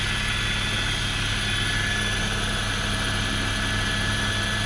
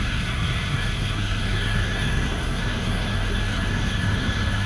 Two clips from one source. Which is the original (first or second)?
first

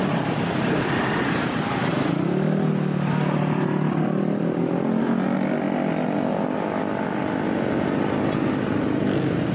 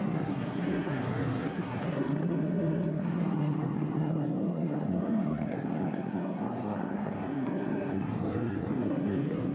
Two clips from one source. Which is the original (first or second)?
first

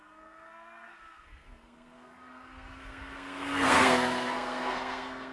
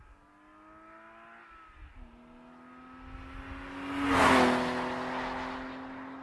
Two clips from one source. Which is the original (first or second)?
second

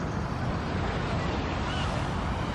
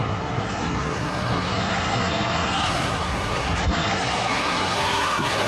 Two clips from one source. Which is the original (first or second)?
first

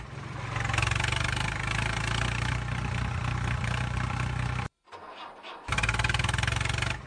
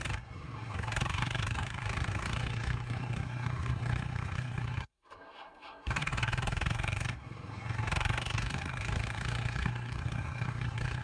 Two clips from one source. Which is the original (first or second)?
first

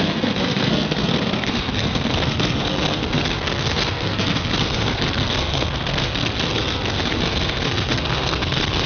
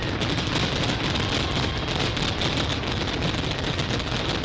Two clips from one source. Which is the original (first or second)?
second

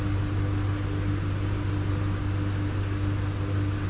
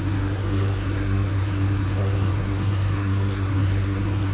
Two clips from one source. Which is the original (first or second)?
first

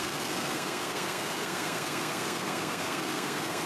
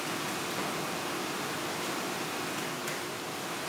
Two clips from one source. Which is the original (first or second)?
second